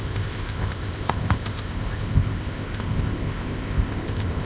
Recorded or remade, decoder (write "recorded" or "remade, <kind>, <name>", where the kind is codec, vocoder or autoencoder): remade, codec, ZipCodec